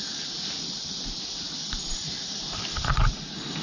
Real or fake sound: real